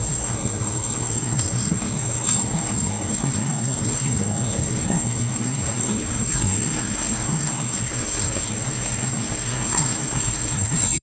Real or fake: fake